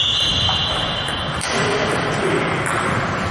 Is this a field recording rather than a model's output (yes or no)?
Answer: yes